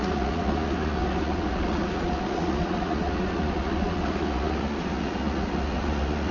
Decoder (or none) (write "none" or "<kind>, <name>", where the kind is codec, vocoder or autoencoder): vocoder, Vocos